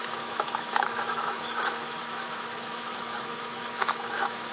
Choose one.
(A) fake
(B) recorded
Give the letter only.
A